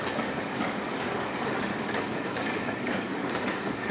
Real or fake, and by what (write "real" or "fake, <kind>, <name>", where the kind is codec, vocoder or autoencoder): fake, codec, DAC